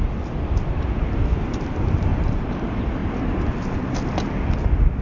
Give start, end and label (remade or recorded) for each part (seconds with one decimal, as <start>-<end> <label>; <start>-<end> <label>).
0.0-2.1 recorded; 2.1-2.6 remade; 2.6-5.0 recorded